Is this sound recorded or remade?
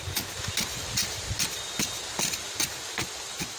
recorded